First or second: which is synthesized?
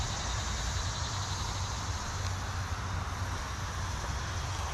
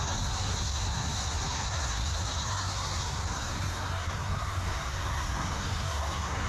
second